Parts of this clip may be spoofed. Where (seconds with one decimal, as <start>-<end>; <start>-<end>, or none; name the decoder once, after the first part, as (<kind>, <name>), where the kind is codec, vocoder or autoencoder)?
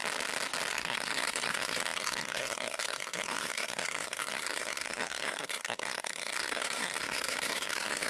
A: 0.7-8.1 (codec, SNAC)